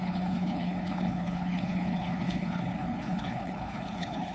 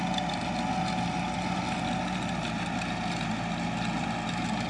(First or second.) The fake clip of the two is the first